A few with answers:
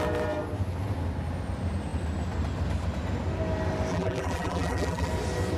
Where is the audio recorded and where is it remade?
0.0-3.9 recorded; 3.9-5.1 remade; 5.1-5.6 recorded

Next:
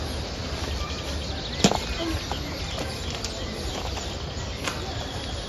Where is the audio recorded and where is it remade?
0.0-5.5 recorded

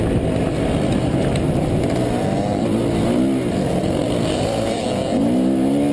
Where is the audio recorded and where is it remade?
0.0-1.2 recorded; 1.2-2.8 remade; 2.8-4.0 recorded; 4.0-4.8 remade; 4.8-5.9 recorded

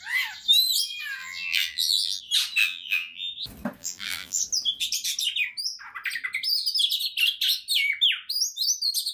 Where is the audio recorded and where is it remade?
0.0-1.2 recorded; 1.2-2.2 remade; 2.2-2.6 recorded; 2.6-3.3 remade; 3.3-3.8 recorded; 3.8-4.4 remade; 4.4-9.1 recorded

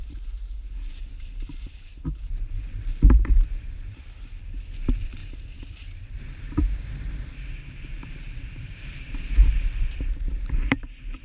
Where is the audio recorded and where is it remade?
0.0-5.2 remade; 5.2-6.1 recorded; 6.1-11.2 remade

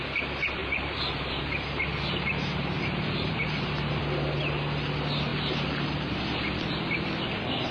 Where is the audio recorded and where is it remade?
0.0-0.6 recorded; 0.6-4.0 remade; 4.0-7.7 recorded

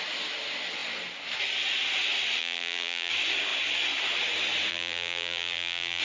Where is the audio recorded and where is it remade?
0.0-2.4 recorded; 2.4-3.1 remade; 3.1-4.7 recorded; 4.7-6.0 remade

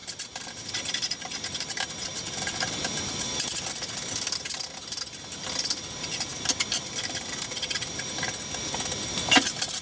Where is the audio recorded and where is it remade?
0.0-9.8 recorded